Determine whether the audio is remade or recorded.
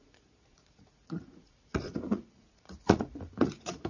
remade